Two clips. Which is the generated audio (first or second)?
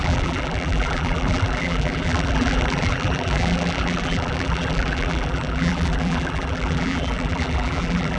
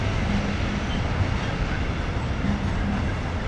first